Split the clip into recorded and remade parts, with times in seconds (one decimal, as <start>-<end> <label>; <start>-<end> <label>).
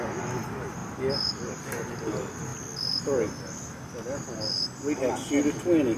0.0-6.0 recorded